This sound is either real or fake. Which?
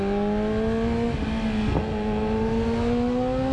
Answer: real